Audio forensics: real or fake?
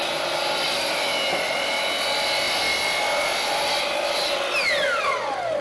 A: real